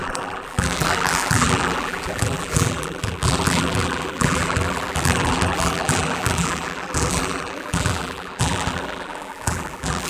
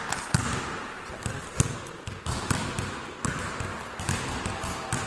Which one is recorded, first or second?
second